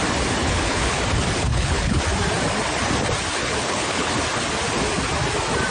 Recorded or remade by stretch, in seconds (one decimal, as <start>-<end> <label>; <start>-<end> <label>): 0.0-0.4 recorded; 0.4-1.0 remade; 1.0-1.5 recorded; 1.5-2.0 remade; 2.0-3.4 recorded; 3.4-4.1 remade; 4.1-5.7 recorded